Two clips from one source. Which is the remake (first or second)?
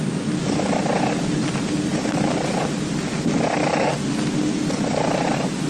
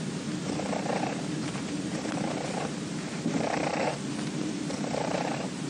second